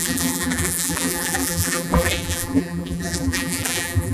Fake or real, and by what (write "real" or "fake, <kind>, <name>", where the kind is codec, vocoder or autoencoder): fake, vocoder, BigVGAN v2